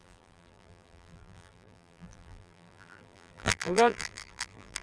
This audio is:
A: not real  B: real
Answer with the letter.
A